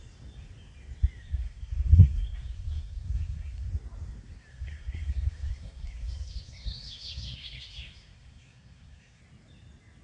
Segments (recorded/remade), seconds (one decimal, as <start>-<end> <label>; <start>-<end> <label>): 0.0-1.2 recorded; 1.2-3.7 remade; 3.7-4.5 recorded; 4.5-9.2 remade; 9.2-10.0 recorded